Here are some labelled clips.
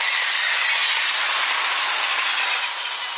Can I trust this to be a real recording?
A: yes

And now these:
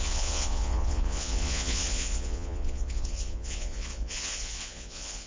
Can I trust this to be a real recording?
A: no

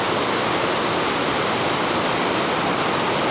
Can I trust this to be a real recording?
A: yes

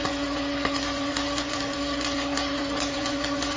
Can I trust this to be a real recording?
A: no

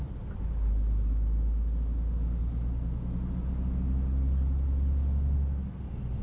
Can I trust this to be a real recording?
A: yes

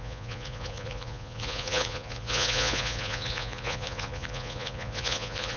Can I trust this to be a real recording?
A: no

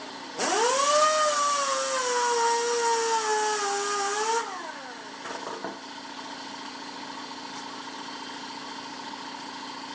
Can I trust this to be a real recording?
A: yes